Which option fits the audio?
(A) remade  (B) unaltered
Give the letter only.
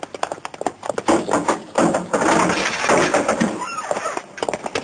B